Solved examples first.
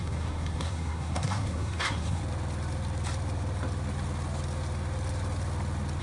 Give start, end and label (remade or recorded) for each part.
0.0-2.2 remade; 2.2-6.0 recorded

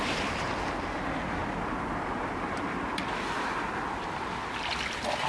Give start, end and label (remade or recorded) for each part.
0.0-5.3 recorded

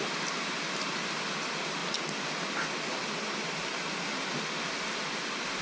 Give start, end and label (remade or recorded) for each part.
0.0-1.8 remade; 1.8-5.6 recorded

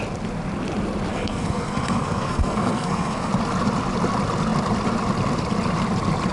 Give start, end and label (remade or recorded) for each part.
0.0-1.1 recorded; 1.1-3.3 remade; 3.3-6.3 recorded

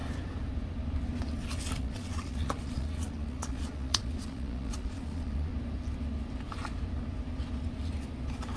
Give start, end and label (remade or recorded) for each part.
0.0-1.8 recorded; 1.8-5.5 remade; 5.5-8.6 recorded

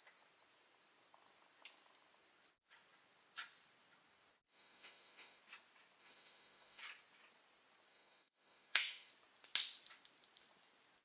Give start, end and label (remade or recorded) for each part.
0.0-4.5 recorded; 4.5-5.4 remade; 5.4-6.0 recorded; 6.0-6.8 remade; 6.8-7.9 recorded; 7.9-9.1 remade; 9.1-11.0 recorded

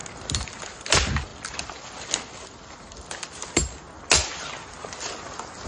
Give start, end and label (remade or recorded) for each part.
0.0-5.7 recorded